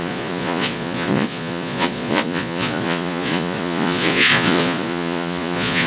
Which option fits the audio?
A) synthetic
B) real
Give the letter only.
A